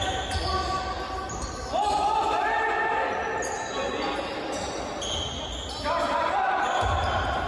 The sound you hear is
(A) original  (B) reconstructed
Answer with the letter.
A